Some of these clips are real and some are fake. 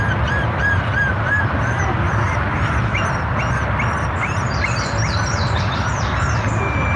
real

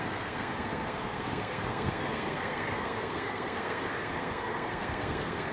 fake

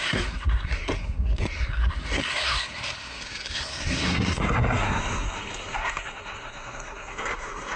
fake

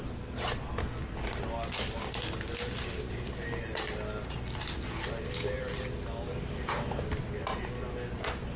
real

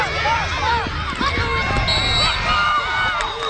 real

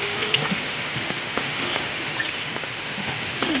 fake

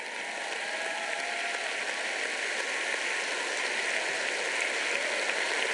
real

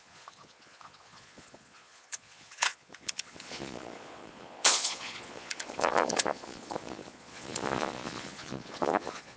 fake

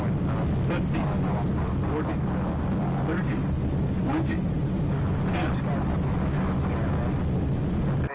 real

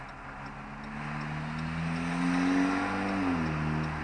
real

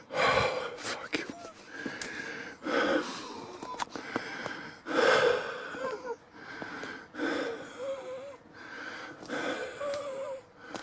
real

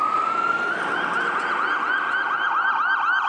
real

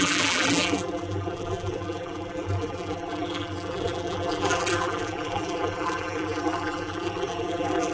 fake